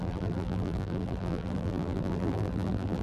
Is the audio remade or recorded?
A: remade